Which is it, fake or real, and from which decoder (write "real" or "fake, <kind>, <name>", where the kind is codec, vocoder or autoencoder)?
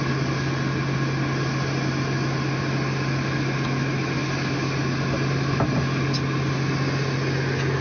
real